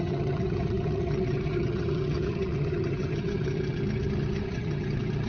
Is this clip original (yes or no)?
no